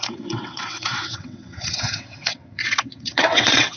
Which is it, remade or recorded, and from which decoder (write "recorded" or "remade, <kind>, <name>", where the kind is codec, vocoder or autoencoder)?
remade, vocoder, WaveNeXt